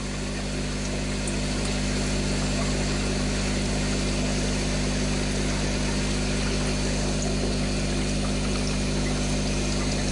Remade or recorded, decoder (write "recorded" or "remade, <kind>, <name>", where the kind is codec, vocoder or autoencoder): recorded